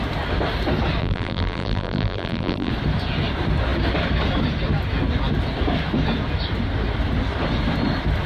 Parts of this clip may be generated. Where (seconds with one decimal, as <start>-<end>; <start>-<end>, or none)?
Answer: 1.0-2.7